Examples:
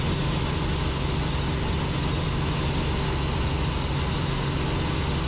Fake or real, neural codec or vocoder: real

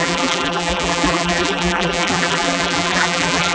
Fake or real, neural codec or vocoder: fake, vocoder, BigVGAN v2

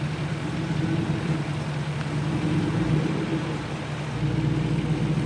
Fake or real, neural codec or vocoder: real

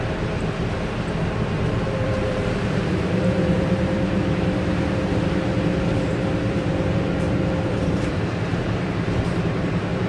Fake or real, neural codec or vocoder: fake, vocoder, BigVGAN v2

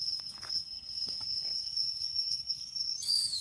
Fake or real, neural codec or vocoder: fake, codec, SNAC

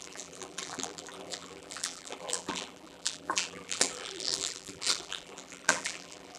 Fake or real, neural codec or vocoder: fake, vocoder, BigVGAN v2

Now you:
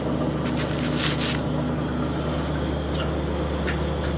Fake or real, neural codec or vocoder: real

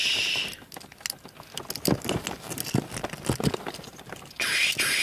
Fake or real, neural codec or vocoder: real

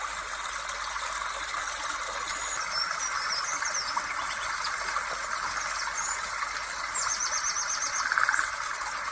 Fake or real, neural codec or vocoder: real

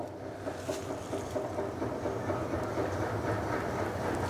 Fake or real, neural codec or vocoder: real